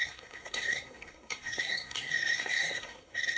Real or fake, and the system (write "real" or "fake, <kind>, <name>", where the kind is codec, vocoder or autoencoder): fake, codec, SNAC